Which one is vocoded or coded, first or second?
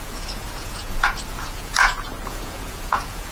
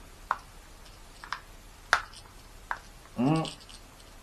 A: first